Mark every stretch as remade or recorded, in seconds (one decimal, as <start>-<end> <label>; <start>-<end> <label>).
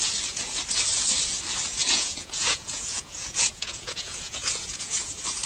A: 0.0-1.8 recorded; 1.8-5.1 remade; 5.1-5.5 recorded